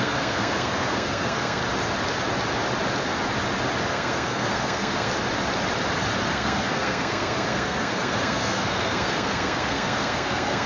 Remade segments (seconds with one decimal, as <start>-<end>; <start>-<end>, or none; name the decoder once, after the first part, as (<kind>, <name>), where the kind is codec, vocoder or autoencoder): 0.0-1.6 (codec, SNAC); 3.9-5.1; 6.3-10.7